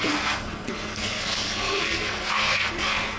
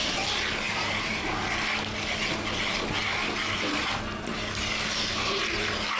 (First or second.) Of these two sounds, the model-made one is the first